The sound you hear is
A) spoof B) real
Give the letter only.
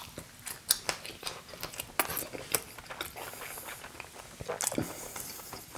B